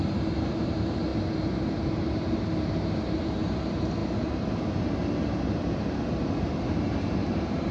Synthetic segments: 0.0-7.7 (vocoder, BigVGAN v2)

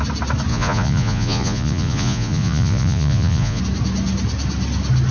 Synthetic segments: 0.5-3.6 (vocoder, Vocos)